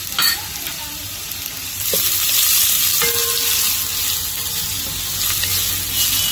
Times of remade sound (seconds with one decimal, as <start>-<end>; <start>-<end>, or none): 0.7-3.0